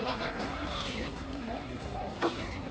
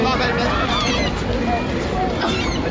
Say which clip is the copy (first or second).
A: first